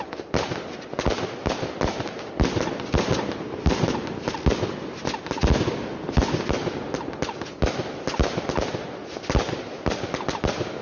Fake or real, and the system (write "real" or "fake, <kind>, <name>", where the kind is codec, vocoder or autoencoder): real